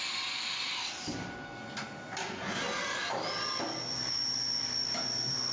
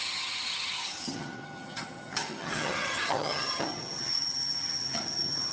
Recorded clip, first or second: first